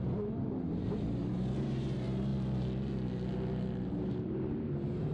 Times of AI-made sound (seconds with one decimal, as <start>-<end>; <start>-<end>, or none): 0.0-2.3; 3.9-5.1